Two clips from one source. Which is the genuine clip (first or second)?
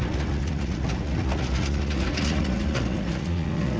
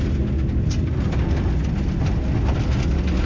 second